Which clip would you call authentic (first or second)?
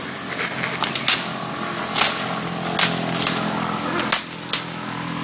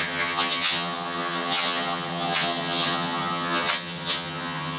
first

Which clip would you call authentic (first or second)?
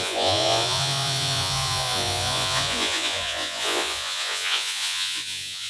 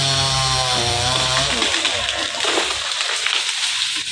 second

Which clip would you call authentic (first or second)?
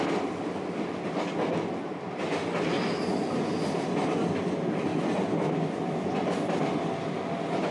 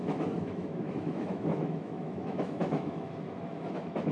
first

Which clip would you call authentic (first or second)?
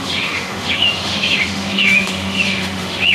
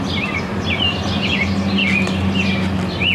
second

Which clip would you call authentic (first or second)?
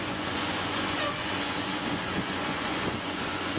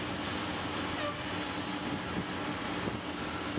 second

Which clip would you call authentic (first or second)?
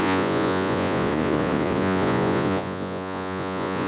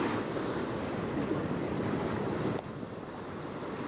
second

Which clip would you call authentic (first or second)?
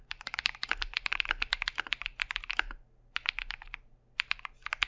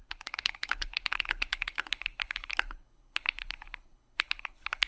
first